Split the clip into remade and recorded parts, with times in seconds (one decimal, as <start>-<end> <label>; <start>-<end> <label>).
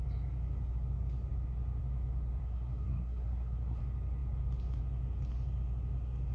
0.0-2.4 recorded; 2.4-3.8 remade; 3.8-6.3 recorded